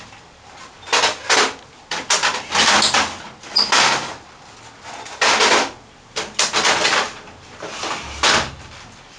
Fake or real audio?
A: real